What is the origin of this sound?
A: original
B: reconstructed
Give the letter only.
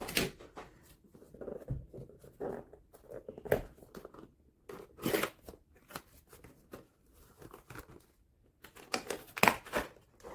A